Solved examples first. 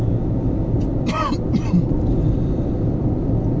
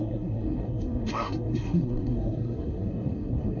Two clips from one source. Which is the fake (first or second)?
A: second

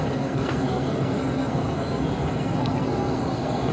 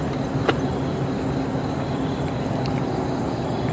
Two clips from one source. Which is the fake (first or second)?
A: first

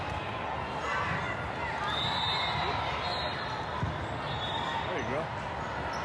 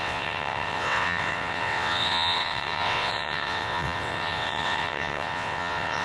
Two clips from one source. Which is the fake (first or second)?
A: second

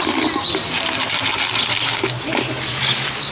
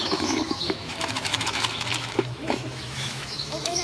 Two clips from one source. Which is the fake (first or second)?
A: second